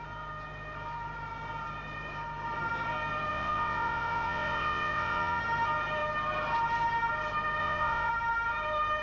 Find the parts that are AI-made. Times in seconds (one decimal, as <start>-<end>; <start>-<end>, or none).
3.3-5.4; 7.6-8.1